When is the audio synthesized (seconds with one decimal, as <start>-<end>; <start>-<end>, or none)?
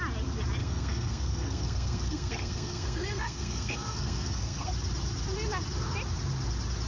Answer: 0.6-4.7